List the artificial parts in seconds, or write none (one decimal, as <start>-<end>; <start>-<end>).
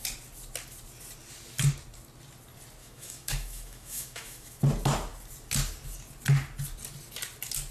2.8-4.6